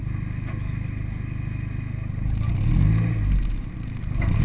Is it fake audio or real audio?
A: real